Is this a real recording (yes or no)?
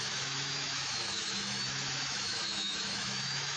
no